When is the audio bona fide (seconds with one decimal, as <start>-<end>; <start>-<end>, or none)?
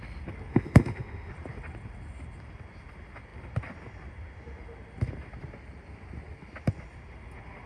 0.0-0.5; 1.3-7.7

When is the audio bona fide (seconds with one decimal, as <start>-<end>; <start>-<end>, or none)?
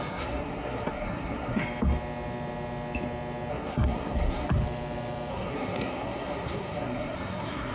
1.6-3.5; 4.6-5.3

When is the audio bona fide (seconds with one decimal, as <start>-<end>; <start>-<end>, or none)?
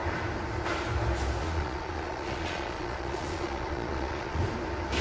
0.0-1.4; 4.4-5.0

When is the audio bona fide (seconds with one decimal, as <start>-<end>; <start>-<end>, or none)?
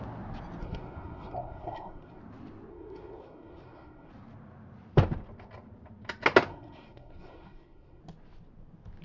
0.0-0.6; 2.2-2.7; 4.1-6.5; 8.0-9.0